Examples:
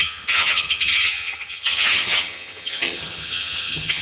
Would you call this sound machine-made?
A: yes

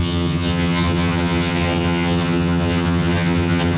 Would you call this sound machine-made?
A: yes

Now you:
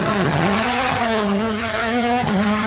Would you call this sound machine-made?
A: yes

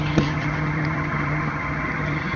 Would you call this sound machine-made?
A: yes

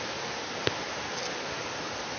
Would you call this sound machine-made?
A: no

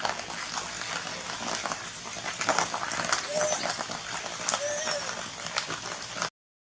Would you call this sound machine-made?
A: no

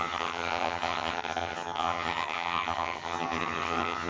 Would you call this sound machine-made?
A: yes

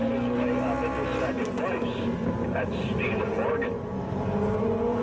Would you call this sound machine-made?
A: no